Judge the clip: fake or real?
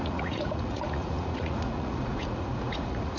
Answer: fake